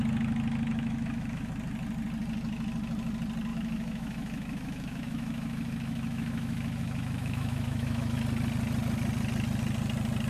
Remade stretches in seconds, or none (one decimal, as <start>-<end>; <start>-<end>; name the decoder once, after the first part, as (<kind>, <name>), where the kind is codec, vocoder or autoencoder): 0.7-1.5 (autoencoder, DAC-VAE); 3.5-8.2